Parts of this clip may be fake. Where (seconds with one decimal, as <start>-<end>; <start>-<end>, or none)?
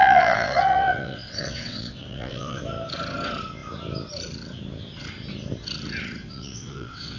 0.0-2.6; 6.2-7.2